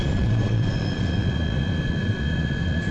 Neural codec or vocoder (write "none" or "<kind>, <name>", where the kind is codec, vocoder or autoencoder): vocoder, Vocos